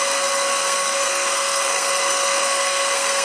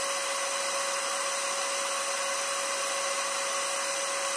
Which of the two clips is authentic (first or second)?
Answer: second